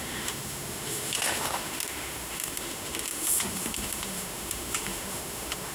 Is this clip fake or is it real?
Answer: fake